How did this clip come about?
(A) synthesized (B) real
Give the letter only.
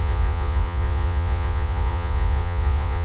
A